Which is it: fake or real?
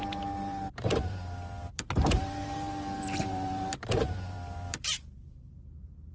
fake